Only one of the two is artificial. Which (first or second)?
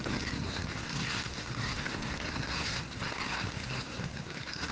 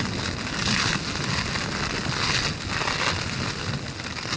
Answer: first